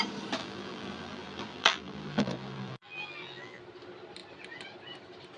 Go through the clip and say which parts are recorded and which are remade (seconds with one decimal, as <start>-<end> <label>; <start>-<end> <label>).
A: 0.0-0.4 recorded; 0.4-3.6 remade; 3.6-5.4 recorded